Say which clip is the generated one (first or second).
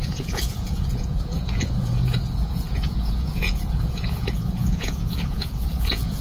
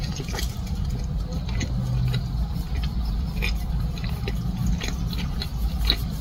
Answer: first